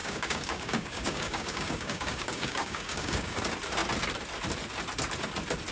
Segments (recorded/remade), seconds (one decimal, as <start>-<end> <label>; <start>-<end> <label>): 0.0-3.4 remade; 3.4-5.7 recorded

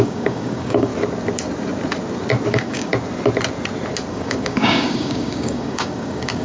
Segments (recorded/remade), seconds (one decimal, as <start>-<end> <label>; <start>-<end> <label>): 0.0-0.9 remade; 0.9-2.5 recorded; 2.5-2.9 remade; 2.9-4.1 recorded; 4.1-6.4 remade

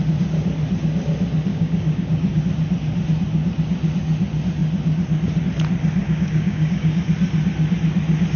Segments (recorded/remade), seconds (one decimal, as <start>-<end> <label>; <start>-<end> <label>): 0.0-1.5 recorded; 1.5-2.4 remade; 2.4-6.0 recorded; 6.0-7.0 remade; 7.0-8.4 recorded

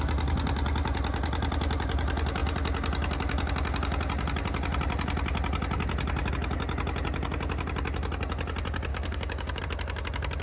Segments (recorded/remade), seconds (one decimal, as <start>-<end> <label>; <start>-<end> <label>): 0.0-8.9 recorded; 8.9-9.6 remade; 9.6-10.4 recorded